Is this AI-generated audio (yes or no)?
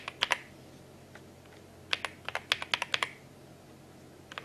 no